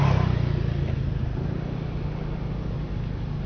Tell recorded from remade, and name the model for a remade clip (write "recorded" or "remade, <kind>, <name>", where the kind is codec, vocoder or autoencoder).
recorded